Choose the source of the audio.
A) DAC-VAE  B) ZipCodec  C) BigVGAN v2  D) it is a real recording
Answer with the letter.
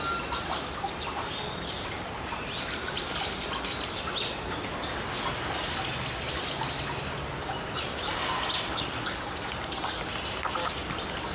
D